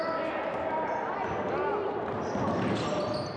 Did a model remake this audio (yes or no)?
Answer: no